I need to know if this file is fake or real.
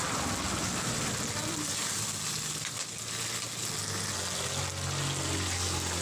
real